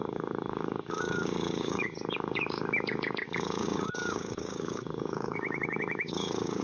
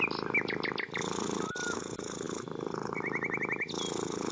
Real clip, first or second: second